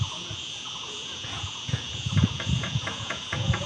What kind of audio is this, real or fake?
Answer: fake